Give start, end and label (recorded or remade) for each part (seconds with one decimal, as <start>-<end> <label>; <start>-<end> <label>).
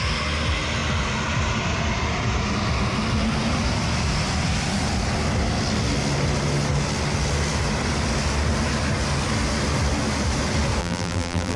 0.0-10.8 recorded; 10.8-11.6 remade